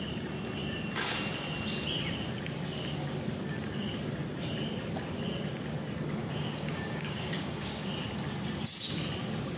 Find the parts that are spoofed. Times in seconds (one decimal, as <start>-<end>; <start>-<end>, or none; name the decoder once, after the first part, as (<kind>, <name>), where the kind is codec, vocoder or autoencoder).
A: 6.2-7.9 (codec, DAC)